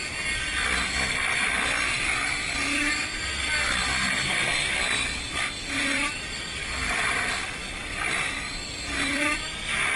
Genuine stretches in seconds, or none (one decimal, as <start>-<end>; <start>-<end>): 0.0-5.8; 9.2-10.0